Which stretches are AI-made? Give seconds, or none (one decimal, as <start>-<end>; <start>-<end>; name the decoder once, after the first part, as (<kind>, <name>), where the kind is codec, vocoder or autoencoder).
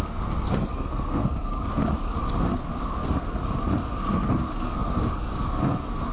0.0-1.8 (codec, SNAC); 2.4-3.4; 3.9-6.1